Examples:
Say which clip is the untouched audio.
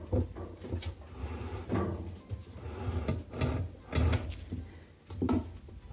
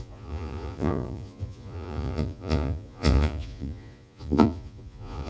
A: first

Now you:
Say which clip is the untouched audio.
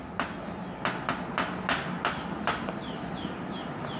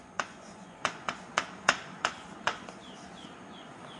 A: first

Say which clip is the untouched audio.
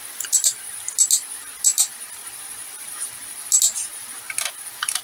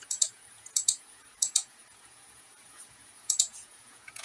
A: first